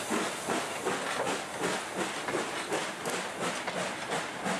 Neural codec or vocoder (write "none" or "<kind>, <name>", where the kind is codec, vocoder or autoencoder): none